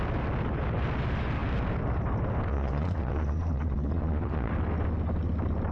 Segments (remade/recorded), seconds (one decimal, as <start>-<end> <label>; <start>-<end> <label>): 0.0-2.5 recorded; 2.5-4.5 remade; 4.5-5.7 recorded